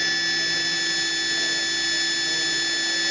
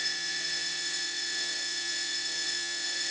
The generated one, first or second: second